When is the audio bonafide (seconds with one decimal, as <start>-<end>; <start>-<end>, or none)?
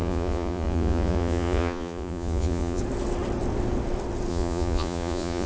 2.8-4.3